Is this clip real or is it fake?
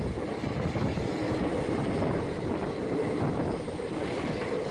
real